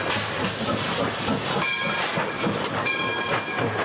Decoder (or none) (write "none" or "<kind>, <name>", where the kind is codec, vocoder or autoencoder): none